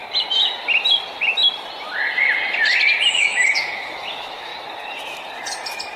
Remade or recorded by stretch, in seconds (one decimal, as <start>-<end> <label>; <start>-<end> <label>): 0.0-3.1 recorded; 3.1-4.5 remade; 4.5-6.0 recorded